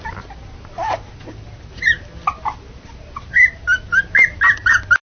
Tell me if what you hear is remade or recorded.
recorded